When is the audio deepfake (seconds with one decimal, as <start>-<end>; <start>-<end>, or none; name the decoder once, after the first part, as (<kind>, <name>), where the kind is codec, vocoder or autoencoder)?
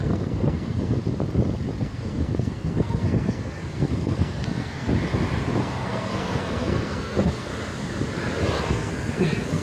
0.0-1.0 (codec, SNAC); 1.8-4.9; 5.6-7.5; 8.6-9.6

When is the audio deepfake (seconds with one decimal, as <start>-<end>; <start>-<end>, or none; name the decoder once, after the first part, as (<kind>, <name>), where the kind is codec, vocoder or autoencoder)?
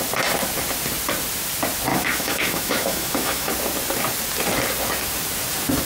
1.9-3.5 (autoencoder, DAC-VAE)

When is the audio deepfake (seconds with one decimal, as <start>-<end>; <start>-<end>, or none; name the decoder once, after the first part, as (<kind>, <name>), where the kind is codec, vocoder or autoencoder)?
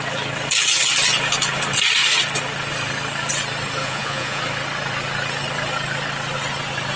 3.8-4.4 (vocoder, Vocos)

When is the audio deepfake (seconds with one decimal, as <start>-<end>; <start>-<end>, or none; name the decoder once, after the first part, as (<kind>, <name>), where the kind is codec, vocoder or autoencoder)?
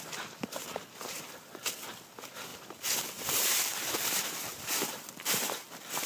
none